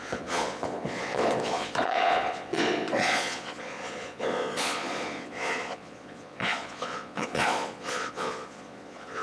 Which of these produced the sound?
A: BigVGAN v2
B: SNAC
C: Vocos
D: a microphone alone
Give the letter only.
C